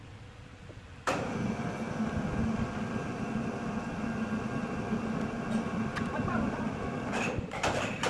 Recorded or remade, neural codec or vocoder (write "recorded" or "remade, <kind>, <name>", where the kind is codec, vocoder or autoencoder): recorded